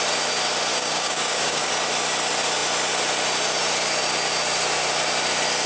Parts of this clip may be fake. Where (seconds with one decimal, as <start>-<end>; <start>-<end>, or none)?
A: 0.7-1.7